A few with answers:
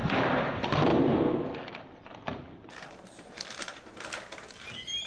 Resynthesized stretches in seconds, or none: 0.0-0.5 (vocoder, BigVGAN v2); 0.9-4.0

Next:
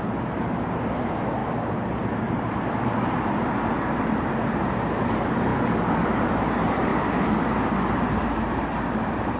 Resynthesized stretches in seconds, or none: 0.0-5.5 (vocoder, BigVGAN v2); 6.4-6.9; 7.9-9.4

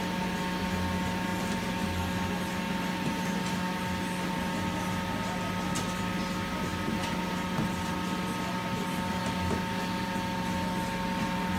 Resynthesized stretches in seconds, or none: none

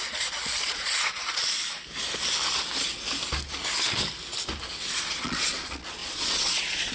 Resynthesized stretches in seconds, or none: 0.0-1.6 (vocoder, Vocos); 4.6-6.9

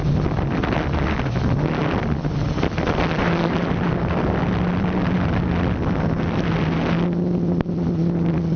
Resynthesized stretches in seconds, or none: none

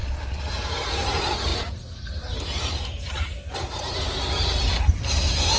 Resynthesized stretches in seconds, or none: 0.0-0.5 (vocoder, Vocos)

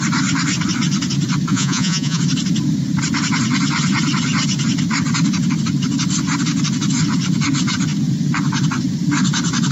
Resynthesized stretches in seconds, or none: 1.5-2.2 (vocoder, Vocos)

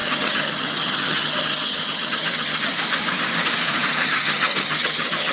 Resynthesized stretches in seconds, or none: 0.0-2.7 (vocoder, HiFi-GAN); 3.9-5.3